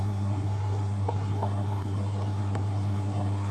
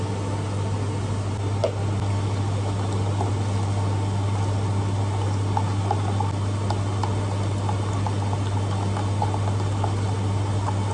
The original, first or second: second